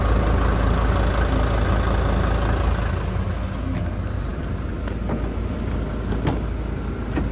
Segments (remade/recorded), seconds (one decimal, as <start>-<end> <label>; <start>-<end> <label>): 0.0-7.3 recorded